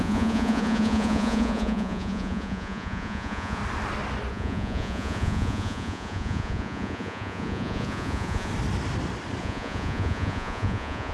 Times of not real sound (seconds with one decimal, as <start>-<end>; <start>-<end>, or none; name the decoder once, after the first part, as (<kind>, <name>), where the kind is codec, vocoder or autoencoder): 0.0-3.6 (vocoder, Vocos); 4.3-8.5; 9.4-11.1